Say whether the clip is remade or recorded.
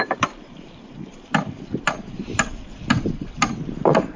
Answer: recorded